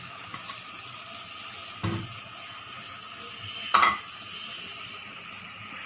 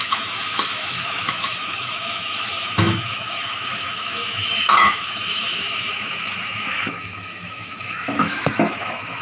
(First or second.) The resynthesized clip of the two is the second